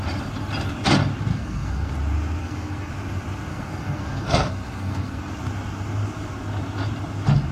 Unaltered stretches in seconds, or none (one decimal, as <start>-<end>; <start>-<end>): 0.0-1.3; 1.9-2.4; 2.9-3.5; 5.3-7.5